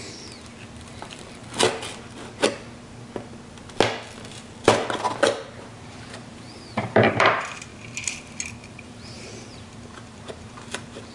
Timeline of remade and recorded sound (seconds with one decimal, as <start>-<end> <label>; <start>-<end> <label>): 0.0-1.4 remade; 1.4-5.6 recorded; 5.6-7.7 remade; 7.7-8.6 recorded; 8.6-11.1 remade